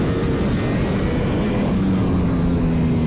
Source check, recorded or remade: recorded